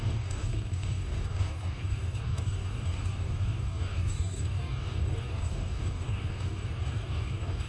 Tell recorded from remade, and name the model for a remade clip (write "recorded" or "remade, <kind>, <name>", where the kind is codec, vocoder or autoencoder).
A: remade, codec, DAC